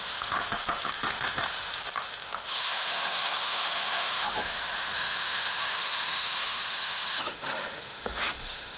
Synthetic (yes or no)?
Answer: yes